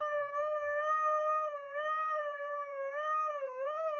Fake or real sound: fake